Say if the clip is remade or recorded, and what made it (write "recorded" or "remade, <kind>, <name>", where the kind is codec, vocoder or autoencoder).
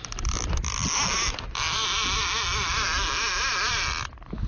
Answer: recorded